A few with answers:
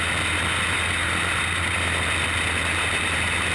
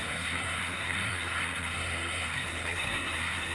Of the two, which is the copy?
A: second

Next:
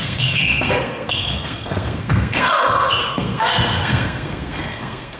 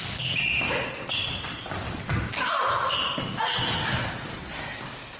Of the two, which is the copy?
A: first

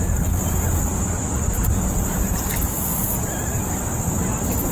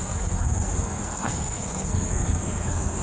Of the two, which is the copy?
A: second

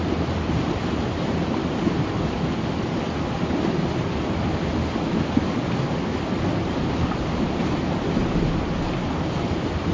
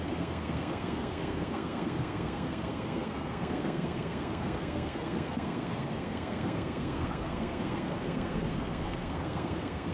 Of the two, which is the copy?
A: second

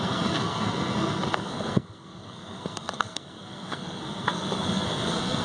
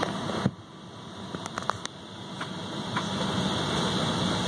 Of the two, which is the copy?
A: first